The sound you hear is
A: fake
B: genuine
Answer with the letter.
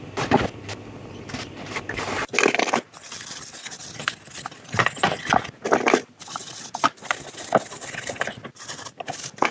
B